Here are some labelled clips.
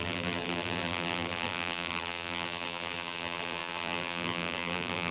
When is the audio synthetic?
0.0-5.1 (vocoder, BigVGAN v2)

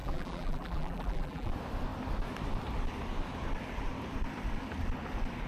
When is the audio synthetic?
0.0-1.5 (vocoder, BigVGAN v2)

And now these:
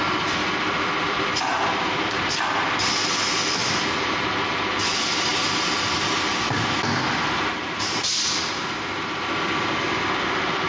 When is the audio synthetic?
3.6-4.1 (vocoder, BigVGAN v2)

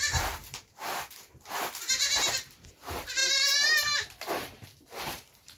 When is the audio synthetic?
0.0-5.6 (vocoder, BigVGAN v2)

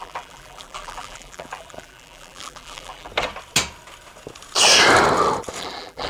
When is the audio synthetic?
0.0-3.1 (vocoder, BigVGAN v2); 5.6-6.1

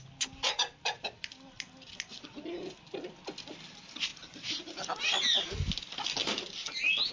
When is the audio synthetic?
4.1-5.0 (vocoder, BigVGAN v2); 6.2-7.1